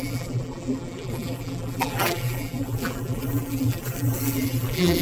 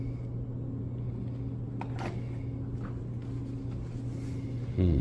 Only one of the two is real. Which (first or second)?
second